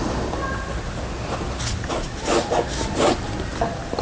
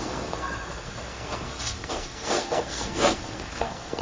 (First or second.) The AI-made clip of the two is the second